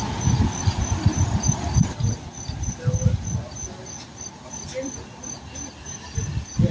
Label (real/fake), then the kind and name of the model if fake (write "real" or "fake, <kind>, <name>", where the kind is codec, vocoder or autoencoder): real